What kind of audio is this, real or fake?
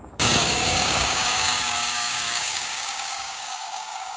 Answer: fake